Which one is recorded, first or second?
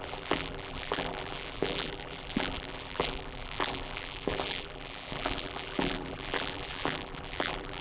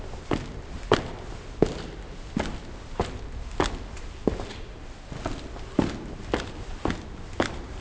second